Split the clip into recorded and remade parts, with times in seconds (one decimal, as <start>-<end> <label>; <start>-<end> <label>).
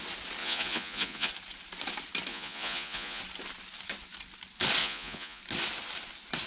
0.0-0.4 recorded; 0.4-1.3 remade; 1.3-2.3 recorded; 2.3-3.2 remade; 3.2-4.8 recorded; 4.8-5.4 remade; 5.4-6.5 recorded